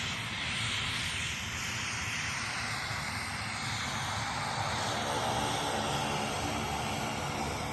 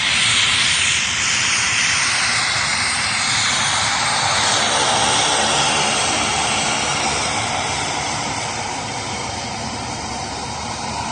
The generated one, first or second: second